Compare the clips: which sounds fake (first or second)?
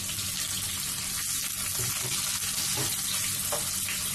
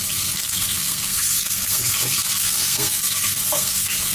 second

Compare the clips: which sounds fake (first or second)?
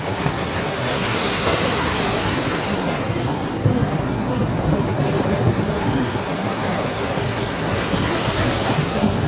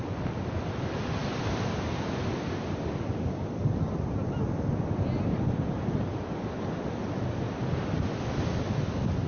first